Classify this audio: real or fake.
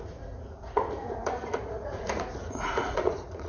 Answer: fake